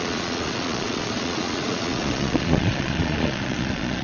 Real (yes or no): no